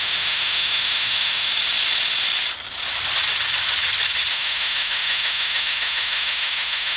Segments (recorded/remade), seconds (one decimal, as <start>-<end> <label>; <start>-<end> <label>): 0.0-1.5 remade; 1.5-4.3 recorded; 4.3-7.0 remade